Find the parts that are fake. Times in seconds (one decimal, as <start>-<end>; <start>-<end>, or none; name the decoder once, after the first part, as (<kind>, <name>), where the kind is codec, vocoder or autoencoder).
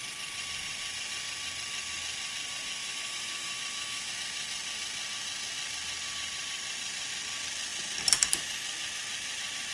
2.8-4.1 (autoencoder, DAC-VAE)